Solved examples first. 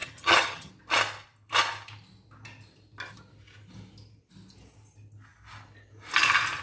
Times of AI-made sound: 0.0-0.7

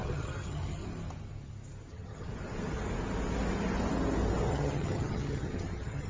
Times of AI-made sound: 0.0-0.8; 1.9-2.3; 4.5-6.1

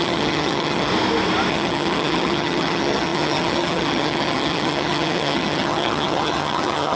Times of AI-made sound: 0.0-0.9; 1.5-7.0

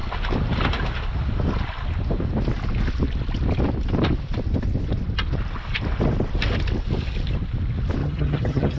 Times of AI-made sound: 8.0-8.8

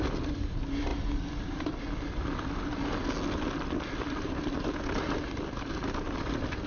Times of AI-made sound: none

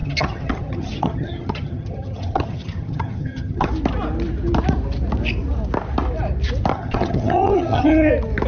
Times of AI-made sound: 0.0-3.7; 6.7-8.1

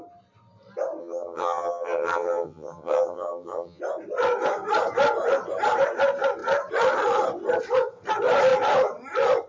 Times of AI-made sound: 1.0-3.8